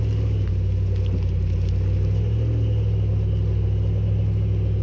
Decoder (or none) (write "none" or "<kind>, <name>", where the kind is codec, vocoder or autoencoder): none